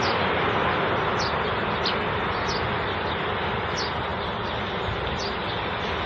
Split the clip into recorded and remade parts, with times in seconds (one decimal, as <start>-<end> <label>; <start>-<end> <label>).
0.0-6.1 recorded

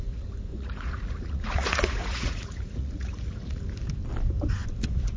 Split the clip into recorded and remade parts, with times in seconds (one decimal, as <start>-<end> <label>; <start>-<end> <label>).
0.0-0.5 recorded; 0.5-3.6 remade; 3.6-5.2 recorded

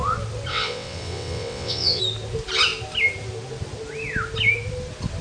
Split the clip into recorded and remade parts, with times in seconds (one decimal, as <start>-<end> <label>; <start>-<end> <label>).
0.0-0.5 recorded; 0.5-2.0 remade; 2.0-5.2 recorded

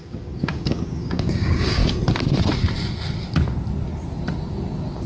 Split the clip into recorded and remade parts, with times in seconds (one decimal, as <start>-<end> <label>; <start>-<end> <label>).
0.0-1.8 remade; 1.8-5.1 recorded